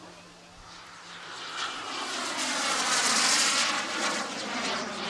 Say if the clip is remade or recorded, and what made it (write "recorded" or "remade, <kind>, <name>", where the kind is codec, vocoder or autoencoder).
recorded